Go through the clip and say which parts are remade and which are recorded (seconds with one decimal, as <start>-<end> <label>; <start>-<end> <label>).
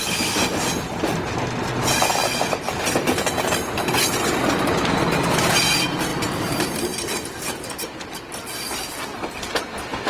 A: 0.0-6.1 recorded; 6.1-9.5 remade; 9.5-10.1 recorded